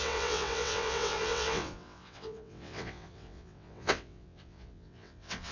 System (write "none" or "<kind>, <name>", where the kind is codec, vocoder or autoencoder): vocoder, WaveNeXt